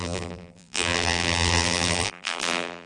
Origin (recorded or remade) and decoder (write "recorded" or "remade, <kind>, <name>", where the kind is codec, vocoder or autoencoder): remade, vocoder, BigVGAN v2